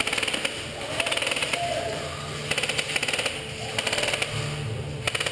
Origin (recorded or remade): recorded